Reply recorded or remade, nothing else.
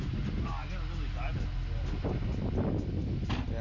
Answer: recorded